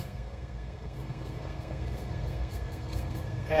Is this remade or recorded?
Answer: remade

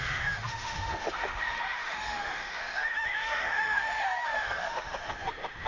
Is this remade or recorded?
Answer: remade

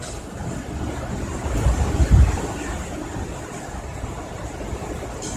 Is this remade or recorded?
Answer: recorded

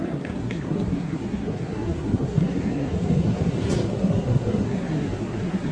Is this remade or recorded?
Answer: remade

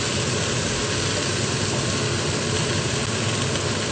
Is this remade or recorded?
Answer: recorded